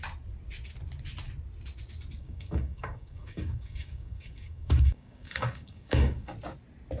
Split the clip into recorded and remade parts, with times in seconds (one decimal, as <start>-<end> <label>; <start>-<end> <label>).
0.0-2.2 recorded; 2.2-6.3 remade; 6.3-7.0 recorded